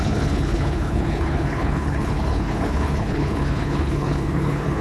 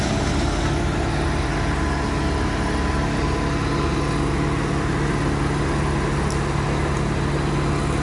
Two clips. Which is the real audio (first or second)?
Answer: second